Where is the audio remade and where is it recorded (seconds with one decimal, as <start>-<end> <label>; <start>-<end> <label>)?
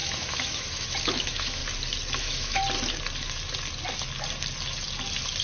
0.0-1.6 remade; 1.6-2.2 recorded; 2.2-2.6 remade; 2.6-5.4 recorded